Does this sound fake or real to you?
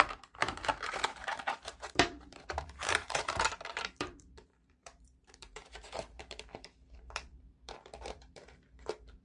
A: fake